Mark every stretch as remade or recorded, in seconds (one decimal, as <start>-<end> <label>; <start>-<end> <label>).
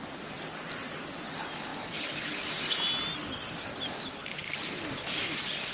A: 0.0-5.7 recorded